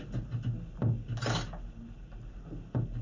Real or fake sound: real